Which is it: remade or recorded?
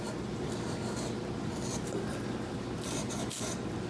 recorded